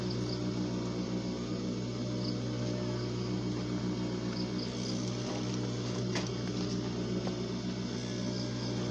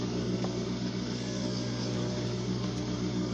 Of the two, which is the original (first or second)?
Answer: first